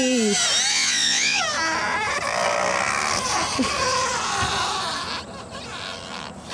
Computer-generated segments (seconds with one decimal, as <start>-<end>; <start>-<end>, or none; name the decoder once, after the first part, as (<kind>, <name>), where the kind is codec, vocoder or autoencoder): 0.7-1.4 (vocoder, Vocos)